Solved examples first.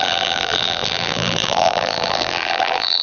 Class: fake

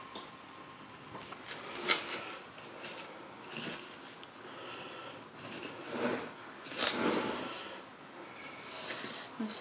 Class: real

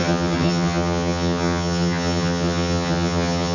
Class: fake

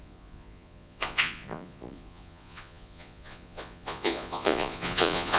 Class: fake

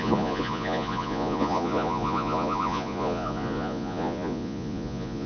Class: fake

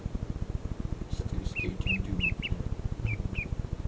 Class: fake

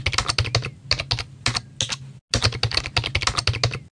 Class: real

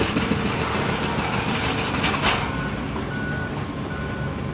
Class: real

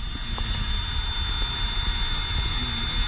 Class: real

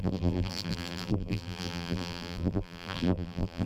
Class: fake